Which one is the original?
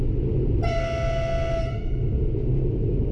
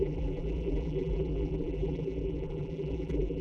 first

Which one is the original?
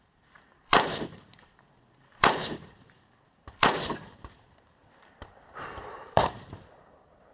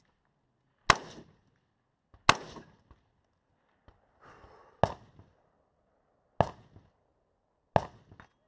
second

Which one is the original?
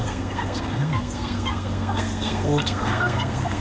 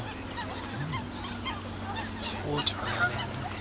second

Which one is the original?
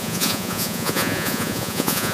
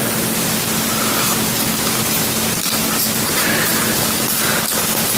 second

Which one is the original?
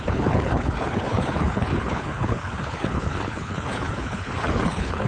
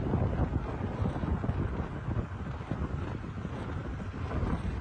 second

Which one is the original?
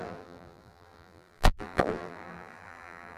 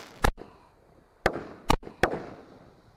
second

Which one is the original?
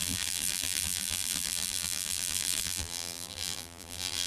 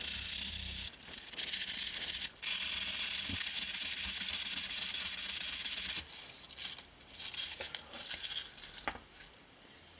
second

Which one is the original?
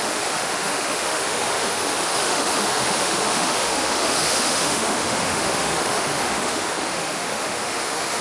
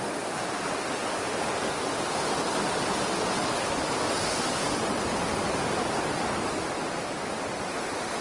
second